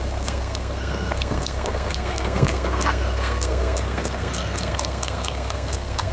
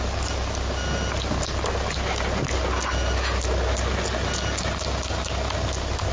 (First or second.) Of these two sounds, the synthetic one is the first